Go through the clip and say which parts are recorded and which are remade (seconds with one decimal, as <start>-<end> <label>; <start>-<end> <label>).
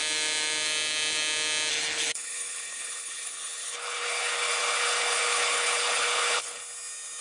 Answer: 0.0-1.7 recorded; 1.7-6.6 remade; 6.6-7.2 recorded